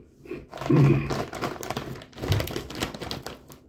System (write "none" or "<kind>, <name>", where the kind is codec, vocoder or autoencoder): none